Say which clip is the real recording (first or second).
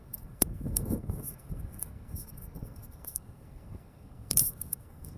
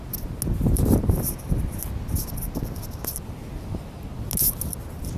second